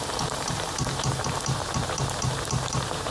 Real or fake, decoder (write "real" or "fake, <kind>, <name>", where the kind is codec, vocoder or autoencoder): fake, vocoder, BigVGAN v2